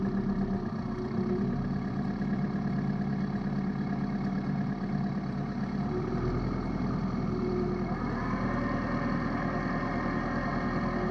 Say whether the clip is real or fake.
real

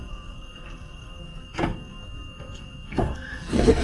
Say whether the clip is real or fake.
fake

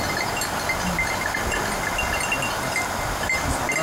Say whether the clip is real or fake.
real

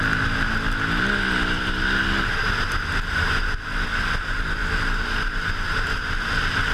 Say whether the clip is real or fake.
real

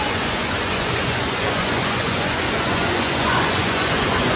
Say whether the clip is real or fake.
fake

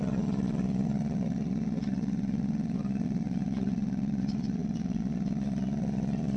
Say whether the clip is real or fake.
fake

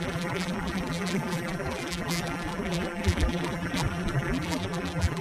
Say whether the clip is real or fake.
fake